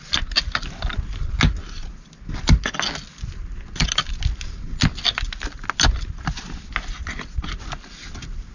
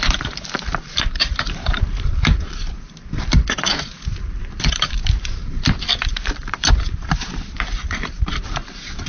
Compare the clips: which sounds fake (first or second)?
second